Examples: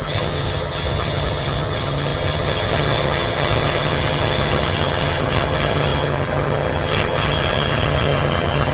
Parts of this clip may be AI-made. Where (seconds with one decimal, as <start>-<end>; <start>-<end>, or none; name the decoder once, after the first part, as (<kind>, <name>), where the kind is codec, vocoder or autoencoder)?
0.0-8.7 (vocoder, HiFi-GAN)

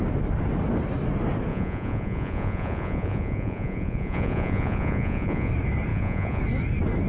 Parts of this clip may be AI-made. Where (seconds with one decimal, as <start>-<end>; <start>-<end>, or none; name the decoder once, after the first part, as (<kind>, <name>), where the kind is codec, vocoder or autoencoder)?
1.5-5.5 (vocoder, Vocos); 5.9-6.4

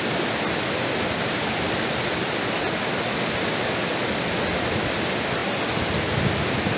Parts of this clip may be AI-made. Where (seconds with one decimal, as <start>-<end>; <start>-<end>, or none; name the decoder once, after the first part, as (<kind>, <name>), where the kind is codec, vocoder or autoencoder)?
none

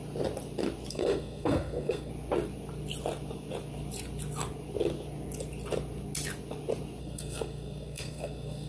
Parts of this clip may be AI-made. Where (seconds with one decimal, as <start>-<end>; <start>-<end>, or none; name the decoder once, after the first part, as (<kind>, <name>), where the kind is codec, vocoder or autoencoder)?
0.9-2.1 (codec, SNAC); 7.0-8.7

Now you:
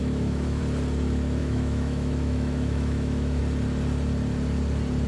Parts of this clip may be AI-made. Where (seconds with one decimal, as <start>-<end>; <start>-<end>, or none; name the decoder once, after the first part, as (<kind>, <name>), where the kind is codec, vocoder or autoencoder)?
0.0-0.6 (autoencoder, DAC-VAE); 1.4-3.4

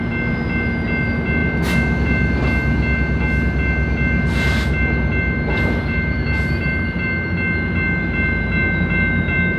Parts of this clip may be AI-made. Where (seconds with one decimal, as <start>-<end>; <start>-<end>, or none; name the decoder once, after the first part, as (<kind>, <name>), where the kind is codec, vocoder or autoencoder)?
none

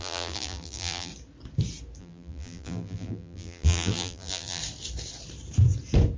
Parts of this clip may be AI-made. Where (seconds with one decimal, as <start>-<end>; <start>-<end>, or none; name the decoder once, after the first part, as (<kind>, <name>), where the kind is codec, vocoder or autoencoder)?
0.0-1.1 (vocoder, BigVGAN v2); 2.0-4.6

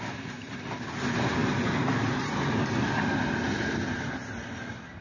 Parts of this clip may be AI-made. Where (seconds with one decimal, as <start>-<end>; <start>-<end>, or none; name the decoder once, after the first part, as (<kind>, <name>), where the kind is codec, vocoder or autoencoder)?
none